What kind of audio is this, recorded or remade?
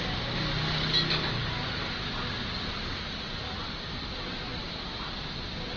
recorded